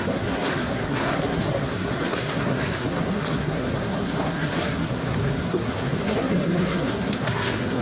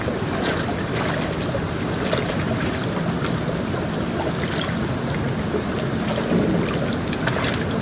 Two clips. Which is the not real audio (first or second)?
first